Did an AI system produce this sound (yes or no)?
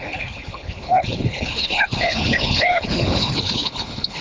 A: yes